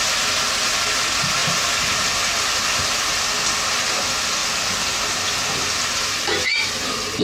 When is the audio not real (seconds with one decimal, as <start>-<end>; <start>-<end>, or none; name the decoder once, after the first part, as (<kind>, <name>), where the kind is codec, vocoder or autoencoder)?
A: none